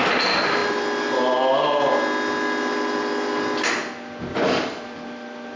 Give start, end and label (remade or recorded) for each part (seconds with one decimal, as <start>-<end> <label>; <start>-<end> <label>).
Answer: 0.0-5.6 recorded